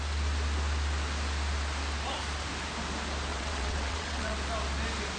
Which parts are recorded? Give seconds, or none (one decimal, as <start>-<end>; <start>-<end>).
0.0-3.3; 4.3-5.2